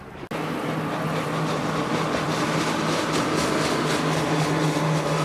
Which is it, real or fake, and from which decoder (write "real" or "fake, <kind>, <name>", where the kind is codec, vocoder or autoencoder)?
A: real